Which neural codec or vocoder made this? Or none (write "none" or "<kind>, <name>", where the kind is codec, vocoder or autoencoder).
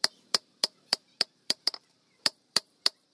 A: vocoder, BigVGAN v2